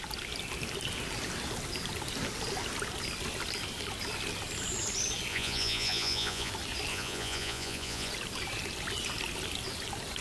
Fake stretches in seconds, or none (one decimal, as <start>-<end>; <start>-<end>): 5.3-6.5; 6.9-8.1